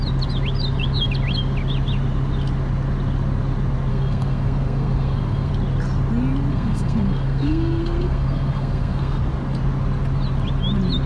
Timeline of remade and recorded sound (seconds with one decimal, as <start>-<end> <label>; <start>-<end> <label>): 0.0-3.9 recorded; 3.9-5.5 remade; 5.5-6.5 recorded; 6.5-9.2 remade; 9.2-11.1 recorded